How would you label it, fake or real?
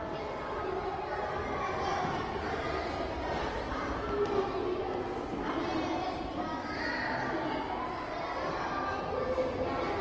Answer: real